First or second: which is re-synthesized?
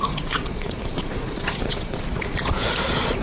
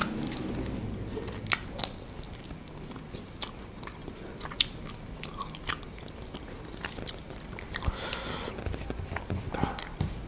first